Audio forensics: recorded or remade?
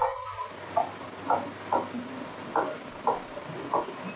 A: recorded